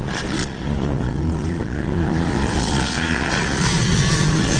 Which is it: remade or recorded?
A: remade